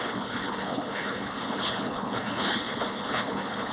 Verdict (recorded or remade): remade